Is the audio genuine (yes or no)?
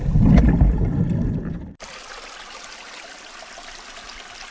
yes